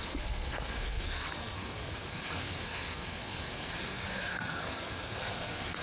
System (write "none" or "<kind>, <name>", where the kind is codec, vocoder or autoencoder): codec, SNAC